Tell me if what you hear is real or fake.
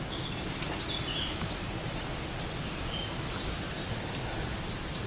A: real